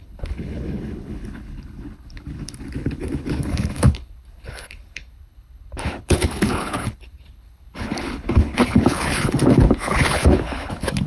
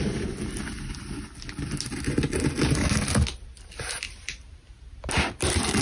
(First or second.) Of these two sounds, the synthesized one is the first